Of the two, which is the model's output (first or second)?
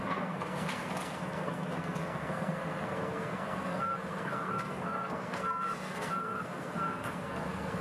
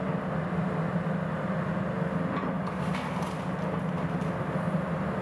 first